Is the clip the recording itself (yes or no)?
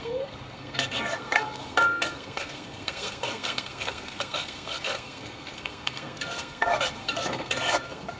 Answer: no